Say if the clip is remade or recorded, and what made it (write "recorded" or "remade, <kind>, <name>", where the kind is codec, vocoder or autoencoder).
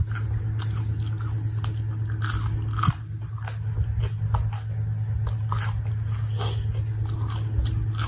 recorded